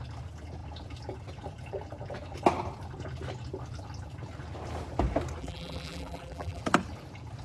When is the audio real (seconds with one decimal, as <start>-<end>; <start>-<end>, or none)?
0.0-5.4; 6.6-7.4